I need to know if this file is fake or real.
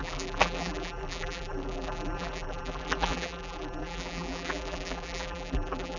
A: fake